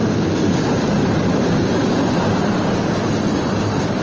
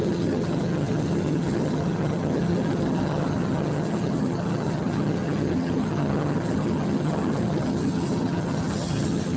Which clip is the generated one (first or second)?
second